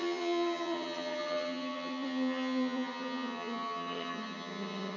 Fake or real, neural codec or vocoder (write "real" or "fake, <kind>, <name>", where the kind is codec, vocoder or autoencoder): fake, vocoder, HiFi-GAN